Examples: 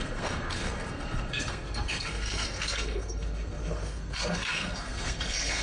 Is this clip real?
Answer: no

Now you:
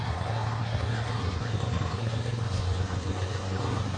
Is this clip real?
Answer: no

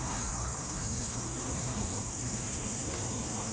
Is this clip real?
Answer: no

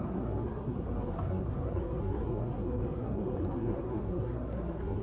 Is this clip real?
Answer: no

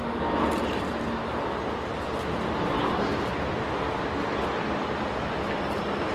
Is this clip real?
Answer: yes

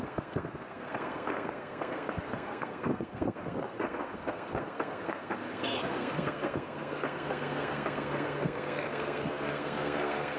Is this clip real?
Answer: no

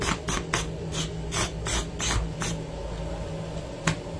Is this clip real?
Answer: yes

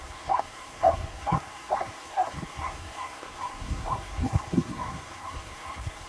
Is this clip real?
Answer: no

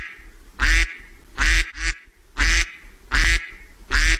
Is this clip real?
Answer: yes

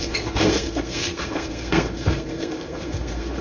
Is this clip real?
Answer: no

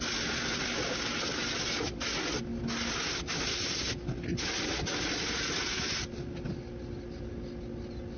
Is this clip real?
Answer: yes